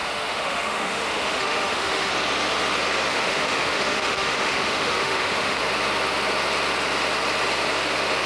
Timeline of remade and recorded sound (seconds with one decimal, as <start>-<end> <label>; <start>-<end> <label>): 0.0-2.1 remade; 2.1-3.1 recorded; 3.1-5.6 remade; 5.6-8.3 recorded